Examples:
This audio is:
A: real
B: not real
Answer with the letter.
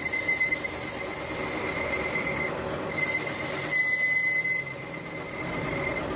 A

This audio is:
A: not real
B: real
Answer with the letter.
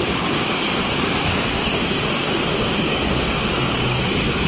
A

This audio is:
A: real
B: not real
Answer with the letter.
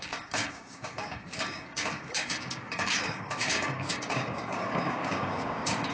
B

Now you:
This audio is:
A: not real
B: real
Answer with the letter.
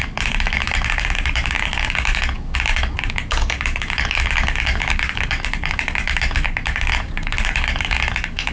A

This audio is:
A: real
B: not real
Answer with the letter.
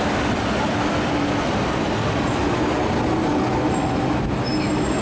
A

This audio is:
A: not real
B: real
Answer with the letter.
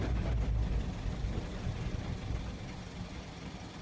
B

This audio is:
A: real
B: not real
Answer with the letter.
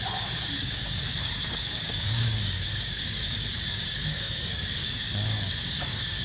B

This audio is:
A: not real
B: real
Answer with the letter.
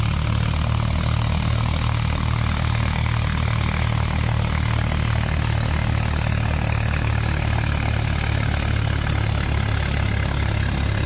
B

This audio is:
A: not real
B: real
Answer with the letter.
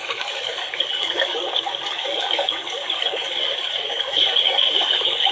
A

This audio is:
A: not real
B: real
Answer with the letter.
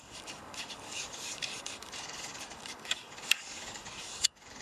A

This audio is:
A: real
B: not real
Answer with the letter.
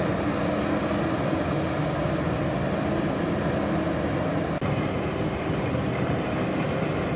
A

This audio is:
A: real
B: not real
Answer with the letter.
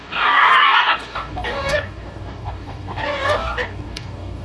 B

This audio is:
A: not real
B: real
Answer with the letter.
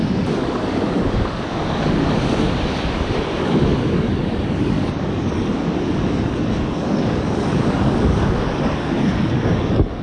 A